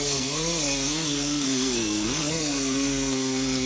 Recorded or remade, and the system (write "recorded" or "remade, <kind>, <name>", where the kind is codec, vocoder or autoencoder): remade, codec, SNAC